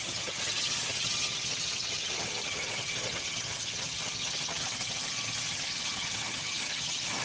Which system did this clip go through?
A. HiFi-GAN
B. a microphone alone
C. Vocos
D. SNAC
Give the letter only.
A